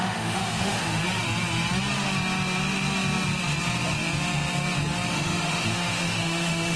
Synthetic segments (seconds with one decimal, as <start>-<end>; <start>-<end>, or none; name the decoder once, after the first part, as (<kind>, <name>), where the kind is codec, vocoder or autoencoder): 0.0-1.0 (autoencoder, DAC-VAE); 5.1-6.8